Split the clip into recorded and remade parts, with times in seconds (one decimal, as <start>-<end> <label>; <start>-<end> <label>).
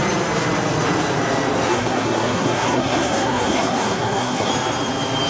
0.0-1.7 recorded; 1.7-4.5 remade; 4.5-5.3 recorded